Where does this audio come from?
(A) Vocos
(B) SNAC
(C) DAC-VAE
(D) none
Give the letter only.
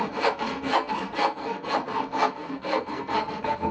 B